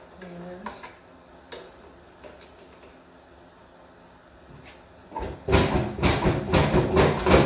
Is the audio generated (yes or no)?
no